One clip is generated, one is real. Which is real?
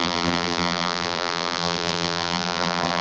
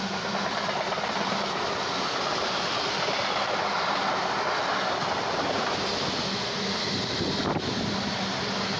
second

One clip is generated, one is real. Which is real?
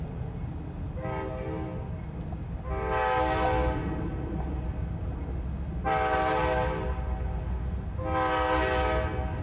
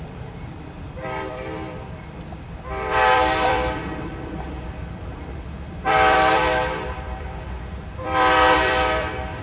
first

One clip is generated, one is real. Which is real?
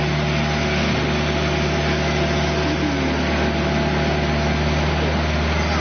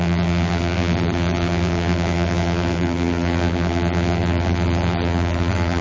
first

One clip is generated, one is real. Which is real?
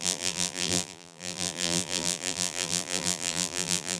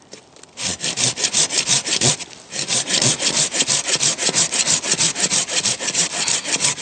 second